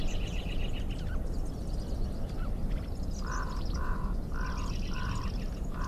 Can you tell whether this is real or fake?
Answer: real